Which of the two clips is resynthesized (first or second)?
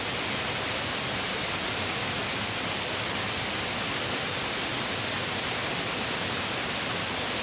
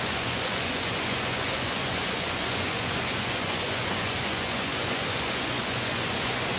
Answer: second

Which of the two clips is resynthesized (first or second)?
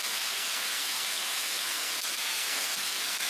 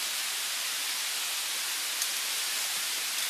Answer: first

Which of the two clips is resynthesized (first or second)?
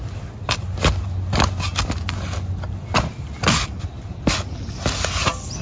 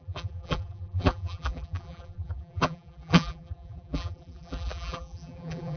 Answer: second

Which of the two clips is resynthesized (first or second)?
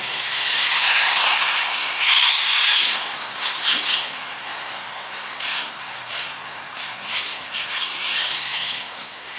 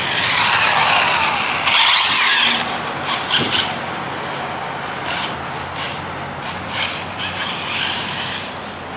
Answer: first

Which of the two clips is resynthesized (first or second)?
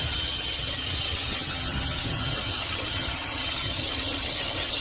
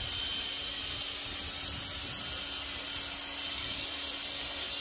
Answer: first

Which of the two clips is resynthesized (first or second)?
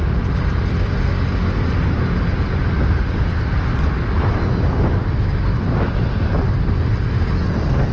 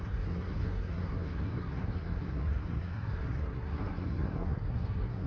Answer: second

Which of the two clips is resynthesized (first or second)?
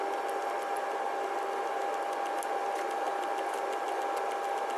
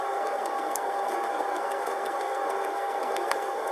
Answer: second